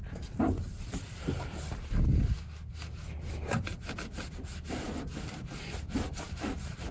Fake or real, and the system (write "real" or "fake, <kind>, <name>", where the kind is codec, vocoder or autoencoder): real